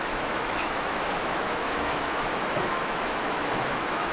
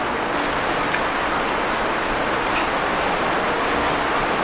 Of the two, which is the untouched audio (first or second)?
second